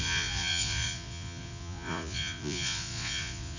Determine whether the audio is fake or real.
fake